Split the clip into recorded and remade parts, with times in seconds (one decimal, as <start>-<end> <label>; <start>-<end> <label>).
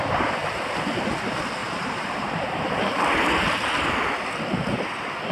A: 0.0-0.4 recorded; 0.4-1.0 remade; 1.0-1.6 recorded; 1.6-2.6 remade; 2.6-5.3 recorded